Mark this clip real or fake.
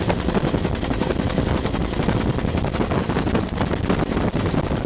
real